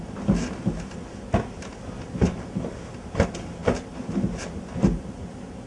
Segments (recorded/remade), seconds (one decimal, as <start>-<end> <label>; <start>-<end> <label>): 0.0-5.7 recorded